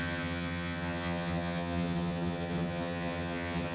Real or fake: fake